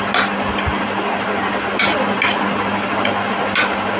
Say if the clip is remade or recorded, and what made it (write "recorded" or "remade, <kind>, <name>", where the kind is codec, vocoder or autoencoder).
recorded